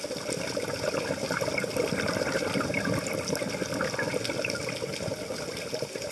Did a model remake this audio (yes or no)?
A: no